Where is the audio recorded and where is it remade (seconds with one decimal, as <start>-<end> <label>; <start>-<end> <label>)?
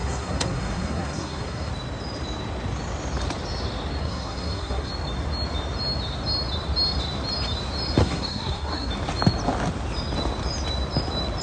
0.0-1.7 remade; 1.7-4.0 recorded; 4.0-4.9 remade; 4.9-8.0 recorded; 8.0-8.9 remade; 8.9-11.4 recorded